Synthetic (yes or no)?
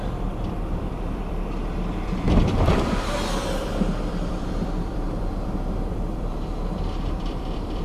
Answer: yes